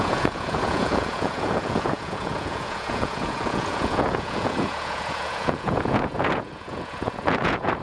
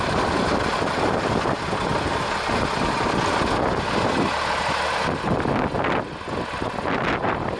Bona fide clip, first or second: second